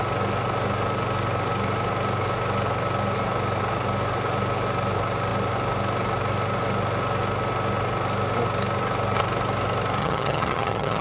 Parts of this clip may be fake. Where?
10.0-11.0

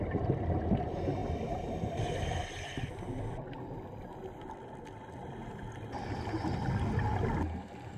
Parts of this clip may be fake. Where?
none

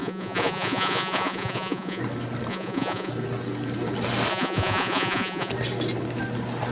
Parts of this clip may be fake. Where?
0.0-2.0; 2.5-3.1; 4.3-5.5

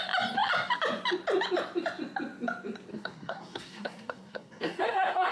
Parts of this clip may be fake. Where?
2.9-5.3

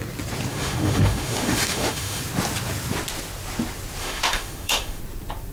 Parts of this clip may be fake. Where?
0.5-2.2; 4.0-5.0

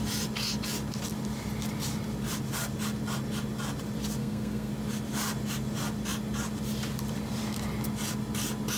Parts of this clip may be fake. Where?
4.2-4.7